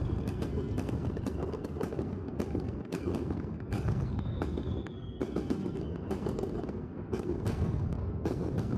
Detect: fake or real fake